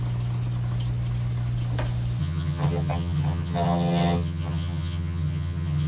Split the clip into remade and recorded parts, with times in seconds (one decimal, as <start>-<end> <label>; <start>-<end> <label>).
0.0-2.2 recorded; 2.2-5.9 remade